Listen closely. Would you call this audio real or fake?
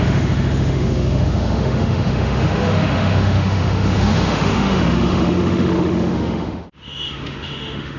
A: fake